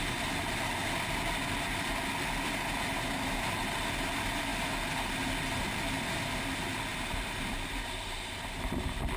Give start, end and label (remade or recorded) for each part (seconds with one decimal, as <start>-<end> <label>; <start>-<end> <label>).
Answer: 0.0-6.9 recorded; 6.9-8.4 remade; 8.4-9.2 recorded